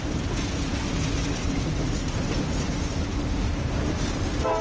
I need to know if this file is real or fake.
real